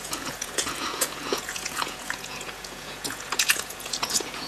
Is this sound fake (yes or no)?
yes